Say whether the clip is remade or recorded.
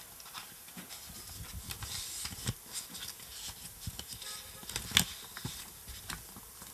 recorded